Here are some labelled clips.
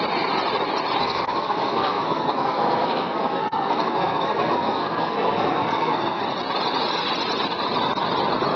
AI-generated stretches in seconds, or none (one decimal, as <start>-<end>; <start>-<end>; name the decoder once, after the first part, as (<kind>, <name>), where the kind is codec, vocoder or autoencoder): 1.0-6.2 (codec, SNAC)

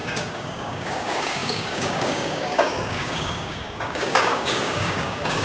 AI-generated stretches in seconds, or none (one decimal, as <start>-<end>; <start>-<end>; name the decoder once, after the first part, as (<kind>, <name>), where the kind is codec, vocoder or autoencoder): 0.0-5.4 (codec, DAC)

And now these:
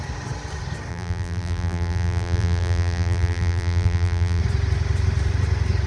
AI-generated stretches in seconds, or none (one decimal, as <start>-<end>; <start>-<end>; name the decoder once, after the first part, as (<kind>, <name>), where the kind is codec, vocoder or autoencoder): 0.9-4.4 (vocoder, BigVGAN v2)

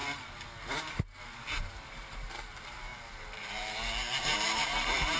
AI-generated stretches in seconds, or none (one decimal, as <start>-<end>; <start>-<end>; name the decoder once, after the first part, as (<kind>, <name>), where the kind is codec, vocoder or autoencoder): 1.6-5.2 (vocoder, BigVGAN v2)